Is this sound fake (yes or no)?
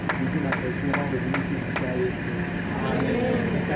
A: no